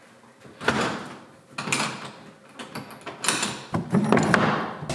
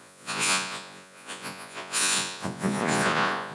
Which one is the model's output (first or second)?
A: second